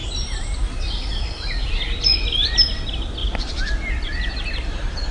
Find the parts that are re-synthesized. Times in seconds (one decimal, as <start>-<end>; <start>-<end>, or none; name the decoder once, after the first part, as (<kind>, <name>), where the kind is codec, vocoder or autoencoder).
0.0-1.1 (vocoder, BigVGAN v2); 3.2-5.1